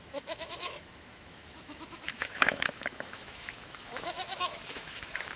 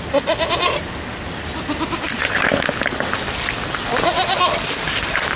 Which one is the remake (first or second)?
first